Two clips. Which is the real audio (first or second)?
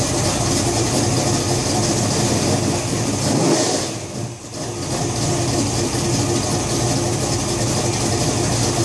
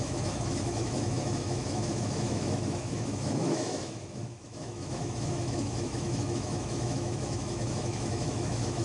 first